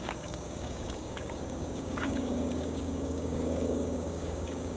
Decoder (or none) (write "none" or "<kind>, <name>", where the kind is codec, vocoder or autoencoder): codec, DAC